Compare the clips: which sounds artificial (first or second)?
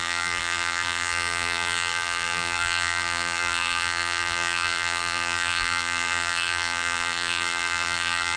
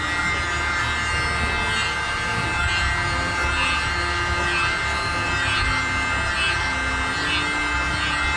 first